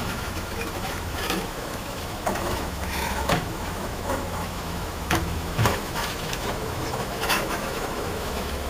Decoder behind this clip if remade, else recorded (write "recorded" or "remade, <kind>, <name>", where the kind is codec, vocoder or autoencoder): remade, autoencoder, DAC-VAE